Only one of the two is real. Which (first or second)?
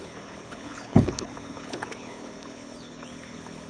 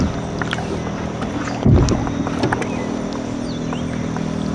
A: second